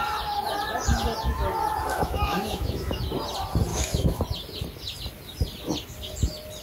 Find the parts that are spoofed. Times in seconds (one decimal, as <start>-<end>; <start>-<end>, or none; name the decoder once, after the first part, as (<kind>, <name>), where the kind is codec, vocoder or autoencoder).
1.9-3.0 (autoencoder, DAC-VAE); 3.7-4.2